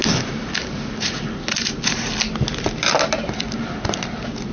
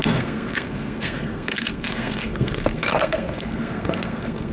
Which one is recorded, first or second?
first